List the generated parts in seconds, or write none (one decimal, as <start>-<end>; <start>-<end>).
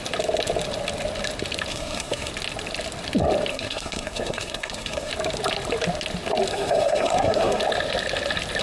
1.7-2.3; 3.5-5.1; 6.5-7.6